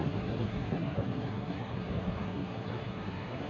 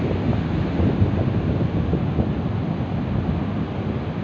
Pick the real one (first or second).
second